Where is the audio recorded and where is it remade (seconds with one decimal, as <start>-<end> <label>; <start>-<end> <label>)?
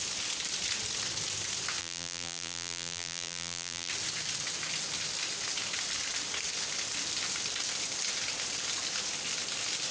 0.0-1.8 recorded; 1.8-3.9 remade; 3.9-9.9 recorded